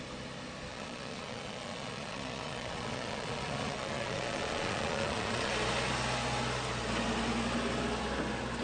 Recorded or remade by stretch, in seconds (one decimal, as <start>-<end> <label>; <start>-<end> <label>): 0.0-0.7 recorded; 0.7-5.5 remade; 5.5-8.6 recorded